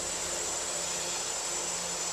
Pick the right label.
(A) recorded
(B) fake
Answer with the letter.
A